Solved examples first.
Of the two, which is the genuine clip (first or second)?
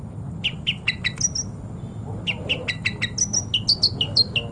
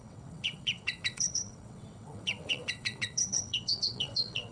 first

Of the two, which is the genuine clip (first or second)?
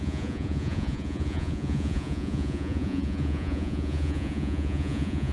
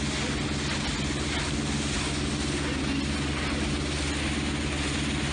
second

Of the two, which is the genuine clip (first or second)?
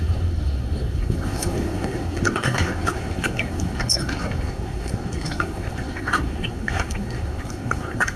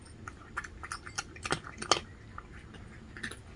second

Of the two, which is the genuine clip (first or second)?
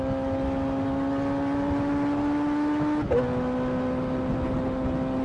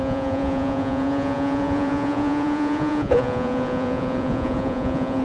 first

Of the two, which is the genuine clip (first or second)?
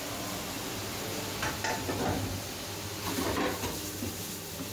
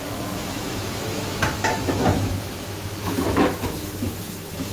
first